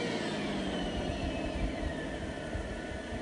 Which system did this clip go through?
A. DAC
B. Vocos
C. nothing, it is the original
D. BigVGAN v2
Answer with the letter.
C